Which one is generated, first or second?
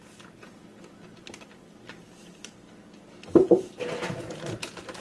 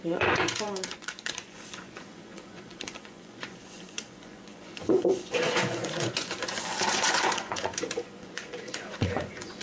second